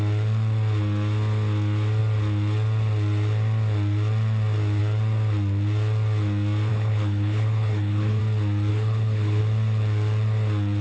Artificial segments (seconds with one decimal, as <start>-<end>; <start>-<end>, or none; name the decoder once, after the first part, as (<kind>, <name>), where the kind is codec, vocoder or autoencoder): 6.7-8.2 (codec, HILCodec); 8.7-9.4

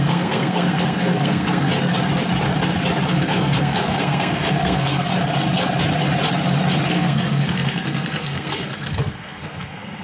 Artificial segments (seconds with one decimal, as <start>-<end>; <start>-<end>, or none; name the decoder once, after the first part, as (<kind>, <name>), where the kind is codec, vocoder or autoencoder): 0.0-1.7 (codec, SNAC); 3.1-5.1; 6.9-10.0

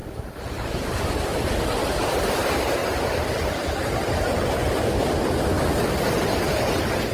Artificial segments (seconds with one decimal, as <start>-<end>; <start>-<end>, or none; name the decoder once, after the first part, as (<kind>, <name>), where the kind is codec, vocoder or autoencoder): 0.0-1.0 (vocoder, BigVGAN v2); 1.8-2.3; 2.8-3.7

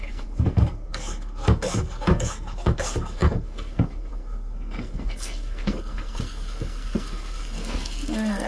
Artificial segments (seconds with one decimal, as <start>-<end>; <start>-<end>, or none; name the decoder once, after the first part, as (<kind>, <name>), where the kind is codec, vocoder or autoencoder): 0.0-8.5 (codec, SNAC)